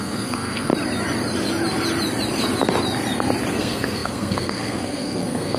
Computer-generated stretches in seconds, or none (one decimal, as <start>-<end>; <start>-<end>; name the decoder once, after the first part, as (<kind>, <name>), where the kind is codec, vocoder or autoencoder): 0.0-0.7 (codec, SNAC); 3.5-5.6